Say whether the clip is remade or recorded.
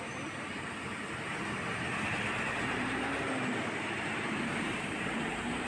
remade